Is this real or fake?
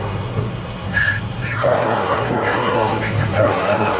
fake